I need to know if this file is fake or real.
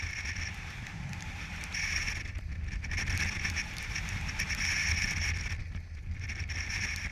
real